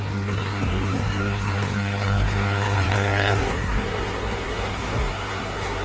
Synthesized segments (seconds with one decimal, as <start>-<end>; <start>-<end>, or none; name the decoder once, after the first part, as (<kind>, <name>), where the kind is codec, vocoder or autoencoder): 0.0-5.8 (codec, SNAC)